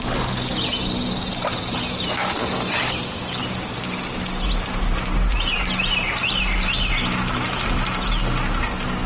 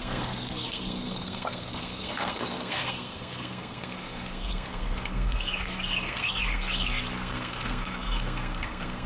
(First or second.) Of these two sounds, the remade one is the second